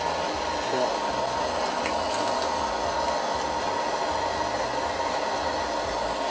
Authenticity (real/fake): real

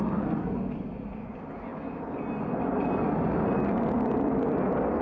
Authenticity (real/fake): real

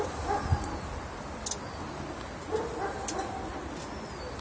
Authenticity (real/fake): real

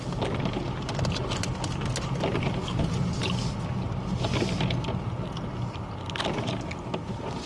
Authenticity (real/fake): real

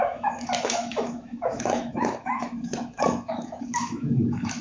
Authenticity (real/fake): fake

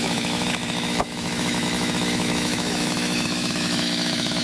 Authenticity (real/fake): fake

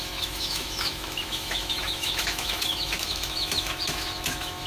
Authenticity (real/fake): fake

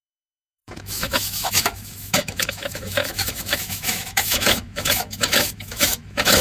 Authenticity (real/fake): fake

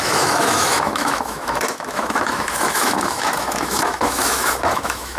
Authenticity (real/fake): fake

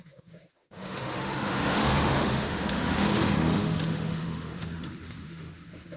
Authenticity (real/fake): fake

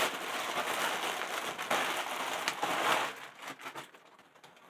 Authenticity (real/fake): real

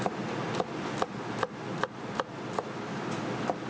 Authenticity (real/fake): real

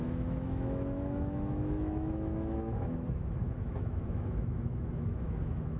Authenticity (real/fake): fake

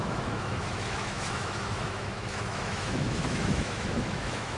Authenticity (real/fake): fake